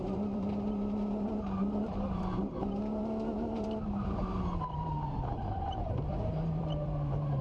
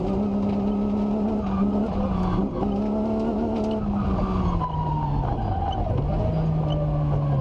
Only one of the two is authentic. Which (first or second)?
second